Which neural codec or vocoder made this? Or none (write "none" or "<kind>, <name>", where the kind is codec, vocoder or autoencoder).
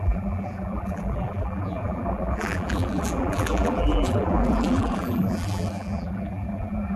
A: vocoder, BigVGAN v2